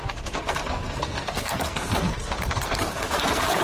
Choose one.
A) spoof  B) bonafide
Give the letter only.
A